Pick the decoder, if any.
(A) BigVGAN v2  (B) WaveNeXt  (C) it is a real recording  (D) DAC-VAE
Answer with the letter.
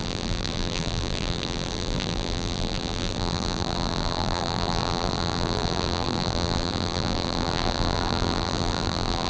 A